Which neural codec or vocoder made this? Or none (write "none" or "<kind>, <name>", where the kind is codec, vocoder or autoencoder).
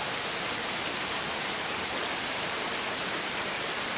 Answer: none